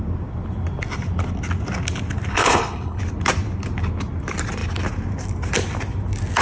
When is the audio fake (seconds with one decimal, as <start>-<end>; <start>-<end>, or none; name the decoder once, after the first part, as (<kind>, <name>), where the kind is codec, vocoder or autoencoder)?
2.3-3.0 (codec, HILCodec)